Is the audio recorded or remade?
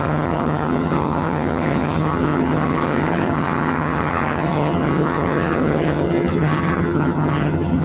remade